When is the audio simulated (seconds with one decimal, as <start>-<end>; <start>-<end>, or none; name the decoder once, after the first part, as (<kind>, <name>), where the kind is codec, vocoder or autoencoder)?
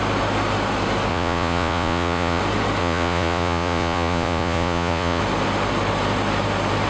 1.1-2.4 (vocoder, Vocos); 2.8-5.2